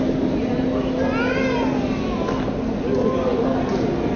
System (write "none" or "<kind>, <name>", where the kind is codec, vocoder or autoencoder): none